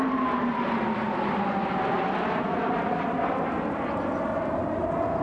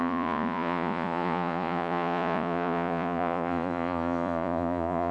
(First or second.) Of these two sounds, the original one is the first